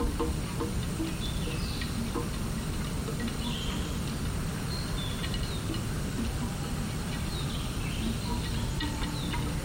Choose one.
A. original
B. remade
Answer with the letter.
A